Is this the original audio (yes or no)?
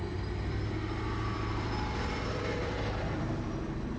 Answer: no